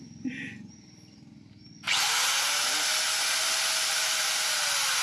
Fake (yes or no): no